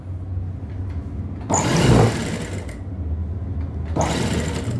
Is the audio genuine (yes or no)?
yes